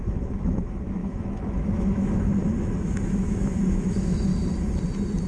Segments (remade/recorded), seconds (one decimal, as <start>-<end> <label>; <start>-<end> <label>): 0.0-2.3 remade; 2.3-2.8 recorded; 2.8-4.3 remade; 4.3-5.3 recorded